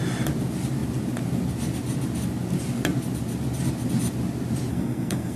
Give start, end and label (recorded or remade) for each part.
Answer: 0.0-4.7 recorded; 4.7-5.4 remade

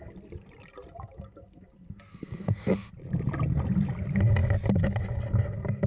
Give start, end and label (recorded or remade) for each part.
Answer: 0.0-2.1 recorded; 2.1-2.9 remade; 2.9-5.9 recorded

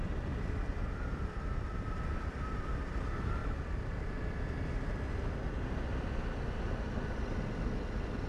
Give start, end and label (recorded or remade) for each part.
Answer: 0.0-8.3 recorded